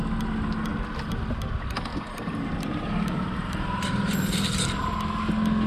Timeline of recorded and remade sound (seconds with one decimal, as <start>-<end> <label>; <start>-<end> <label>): 0.0-1.9 recorded; 1.9-4.9 remade; 4.9-5.7 recorded